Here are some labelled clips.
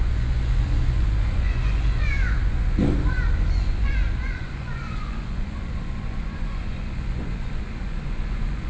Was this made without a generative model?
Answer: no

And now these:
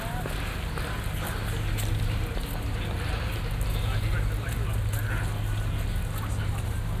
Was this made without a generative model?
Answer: yes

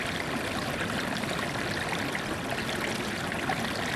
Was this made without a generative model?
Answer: yes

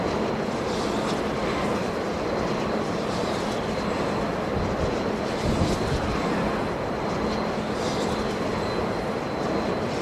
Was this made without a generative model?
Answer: yes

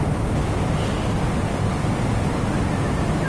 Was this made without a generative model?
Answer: yes